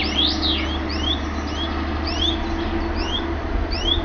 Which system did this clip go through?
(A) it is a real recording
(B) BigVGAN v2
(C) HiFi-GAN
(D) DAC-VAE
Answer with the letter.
A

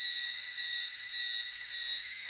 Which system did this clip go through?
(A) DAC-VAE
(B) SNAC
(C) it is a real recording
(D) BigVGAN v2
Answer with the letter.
A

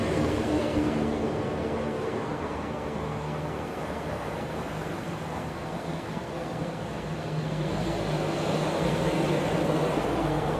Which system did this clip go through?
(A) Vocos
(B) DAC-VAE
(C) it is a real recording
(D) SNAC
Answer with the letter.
D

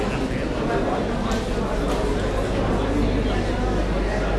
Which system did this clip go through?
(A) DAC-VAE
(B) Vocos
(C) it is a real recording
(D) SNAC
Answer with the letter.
C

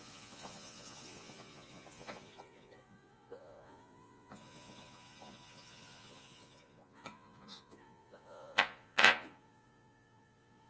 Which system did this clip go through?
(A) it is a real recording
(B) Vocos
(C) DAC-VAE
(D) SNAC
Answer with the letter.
B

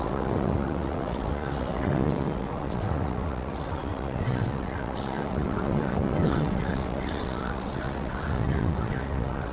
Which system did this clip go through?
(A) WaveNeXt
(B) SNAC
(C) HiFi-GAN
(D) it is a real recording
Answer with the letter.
A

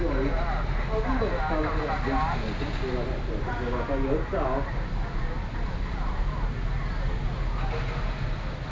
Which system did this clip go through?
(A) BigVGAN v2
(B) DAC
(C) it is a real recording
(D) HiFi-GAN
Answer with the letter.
C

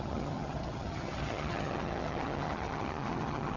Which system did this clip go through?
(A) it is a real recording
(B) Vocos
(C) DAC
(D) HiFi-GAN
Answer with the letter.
D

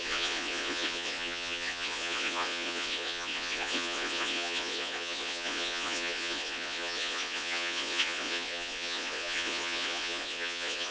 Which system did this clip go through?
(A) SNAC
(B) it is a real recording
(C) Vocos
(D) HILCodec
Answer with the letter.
C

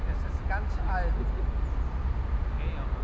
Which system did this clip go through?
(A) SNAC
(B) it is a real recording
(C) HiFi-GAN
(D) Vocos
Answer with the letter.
B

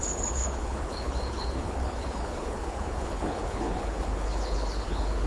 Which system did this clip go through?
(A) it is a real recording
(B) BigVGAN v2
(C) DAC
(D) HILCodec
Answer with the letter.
D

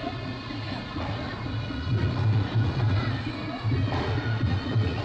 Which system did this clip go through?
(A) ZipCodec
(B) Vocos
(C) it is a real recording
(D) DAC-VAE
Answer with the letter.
B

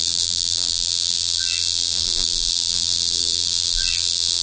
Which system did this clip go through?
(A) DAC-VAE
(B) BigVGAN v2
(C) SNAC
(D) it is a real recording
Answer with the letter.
B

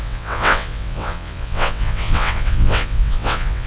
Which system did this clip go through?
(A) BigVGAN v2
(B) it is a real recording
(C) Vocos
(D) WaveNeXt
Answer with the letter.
D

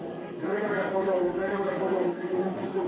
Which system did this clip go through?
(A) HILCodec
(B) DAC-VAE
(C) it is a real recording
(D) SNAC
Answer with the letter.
D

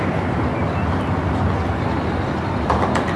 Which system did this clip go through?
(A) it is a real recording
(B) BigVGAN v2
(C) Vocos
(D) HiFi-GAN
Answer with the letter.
A